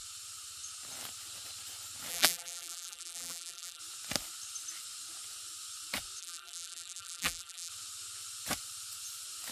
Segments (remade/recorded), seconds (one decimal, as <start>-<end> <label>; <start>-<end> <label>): 0.0-2.1 recorded; 2.1-3.8 remade; 3.8-6.2 recorded; 6.2-7.7 remade; 7.7-9.5 recorded